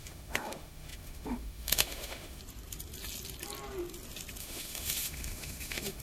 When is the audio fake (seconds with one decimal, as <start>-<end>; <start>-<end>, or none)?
0.0-2.4; 4.4-6.0